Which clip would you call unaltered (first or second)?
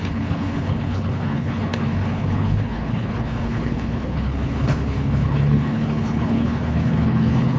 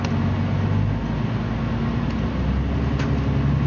second